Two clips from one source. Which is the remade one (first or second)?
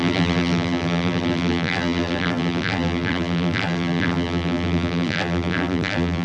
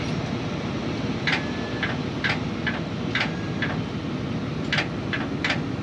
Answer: first